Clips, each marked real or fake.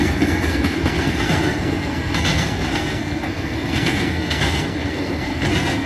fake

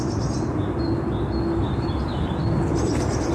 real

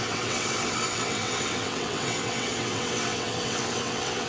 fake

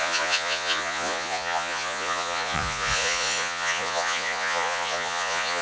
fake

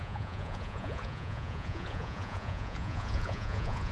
fake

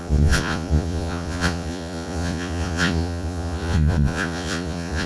fake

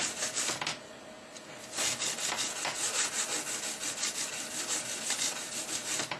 real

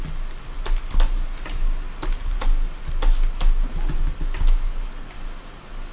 real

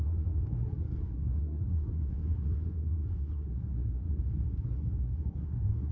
fake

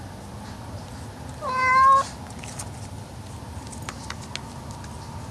real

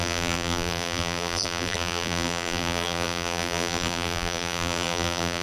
fake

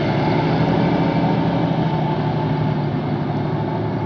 real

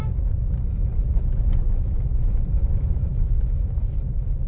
real